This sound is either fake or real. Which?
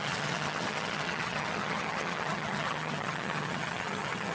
fake